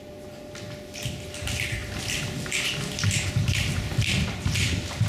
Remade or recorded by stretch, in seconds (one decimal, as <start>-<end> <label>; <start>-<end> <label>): 0.0-5.1 recorded